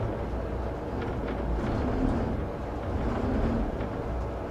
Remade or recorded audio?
recorded